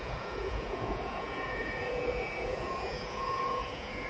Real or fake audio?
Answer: fake